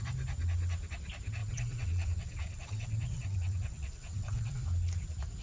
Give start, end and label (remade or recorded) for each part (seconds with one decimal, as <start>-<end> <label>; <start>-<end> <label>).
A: 0.0-1.4 recorded; 1.4-4.6 remade; 4.6-5.4 recorded

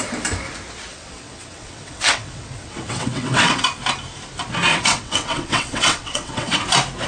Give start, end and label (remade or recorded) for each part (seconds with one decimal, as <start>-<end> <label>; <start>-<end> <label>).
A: 0.0-0.9 recorded; 0.9-3.6 remade; 3.6-4.7 recorded; 4.7-6.6 remade; 6.6-7.1 recorded

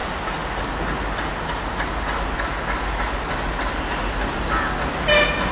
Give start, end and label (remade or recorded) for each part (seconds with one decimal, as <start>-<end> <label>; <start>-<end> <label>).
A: 0.0-5.5 recorded

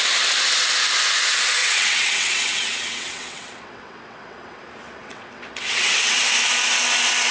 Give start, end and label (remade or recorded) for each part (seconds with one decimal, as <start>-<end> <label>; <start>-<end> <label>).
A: 0.0-1.6 recorded; 1.6-4.6 remade; 4.6-5.0 recorded; 5.0-6.2 remade; 6.2-7.3 recorded

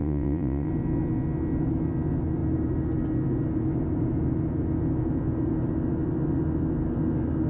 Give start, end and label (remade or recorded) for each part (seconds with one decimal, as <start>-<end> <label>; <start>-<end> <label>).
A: 0.0-0.7 remade; 0.7-7.5 recorded

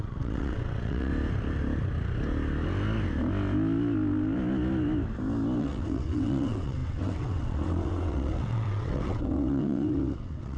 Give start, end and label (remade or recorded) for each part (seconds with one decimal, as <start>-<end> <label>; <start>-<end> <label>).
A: 0.0-1.1 remade; 1.1-5.6 recorded; 5.6-10.6 remade

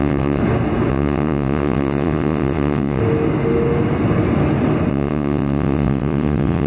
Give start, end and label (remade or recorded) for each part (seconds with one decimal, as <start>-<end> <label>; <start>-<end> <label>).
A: 0.0-0.4 remade; 0.4-0.9 recorded; 0.9-3.0 remade; 3.0-4.9 recorded; 4.9-6.7 remade